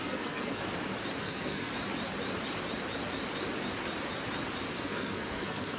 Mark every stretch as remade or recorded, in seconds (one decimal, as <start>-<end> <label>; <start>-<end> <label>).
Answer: 0.0-0.6 remade; 0.6-1.2 recorded; 1.2-1.7 remade; 1.7-4.7 recorded; 4.7-5.8 remade